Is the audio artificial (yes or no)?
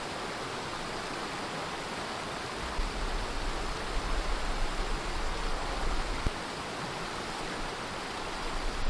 no